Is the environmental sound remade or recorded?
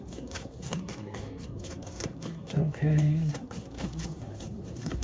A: remade